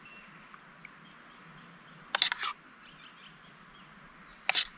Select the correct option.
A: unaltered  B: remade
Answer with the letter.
A